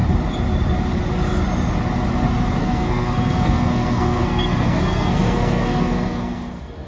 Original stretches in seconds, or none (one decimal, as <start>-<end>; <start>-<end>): 0.0-2.6